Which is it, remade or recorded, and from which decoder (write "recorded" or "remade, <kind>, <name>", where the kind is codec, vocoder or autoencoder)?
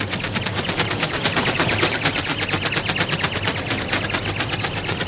recorded